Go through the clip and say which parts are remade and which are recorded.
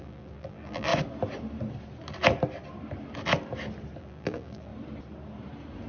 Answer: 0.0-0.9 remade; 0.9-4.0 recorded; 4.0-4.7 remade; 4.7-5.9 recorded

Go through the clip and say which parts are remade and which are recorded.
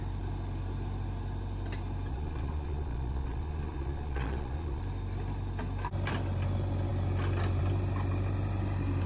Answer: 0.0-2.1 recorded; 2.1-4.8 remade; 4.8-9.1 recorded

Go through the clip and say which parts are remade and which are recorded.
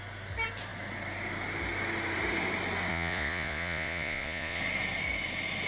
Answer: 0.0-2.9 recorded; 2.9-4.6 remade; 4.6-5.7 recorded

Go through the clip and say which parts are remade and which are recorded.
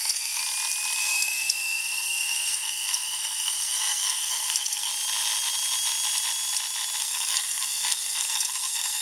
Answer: 0.0-0.4 remade; 0.4-1.0 recorded; 1.0-4.9 remade; 4.9-7.0 recorded; 7.0-9.0 remade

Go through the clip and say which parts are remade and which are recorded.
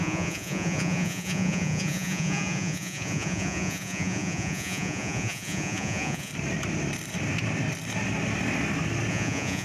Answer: 0.0-6.3 remade; 6.3-9.1 recorded; 9.1-9.6 remade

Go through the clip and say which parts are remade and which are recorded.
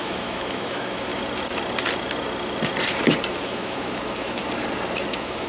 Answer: 0.0-1.1 remade; 1.1-3.3 recorded; 3.3-4.4 remade; 4.4-5.1 recorded; 5.1-5.5 remade